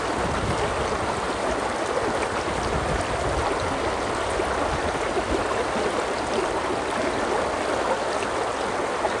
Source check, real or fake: real